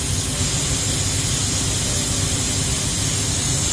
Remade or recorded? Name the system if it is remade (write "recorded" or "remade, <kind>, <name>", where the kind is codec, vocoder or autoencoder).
recorded